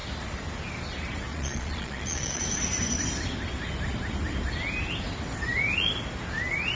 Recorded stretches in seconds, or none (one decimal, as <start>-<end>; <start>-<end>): 0.0-1.3; 2.4-6.8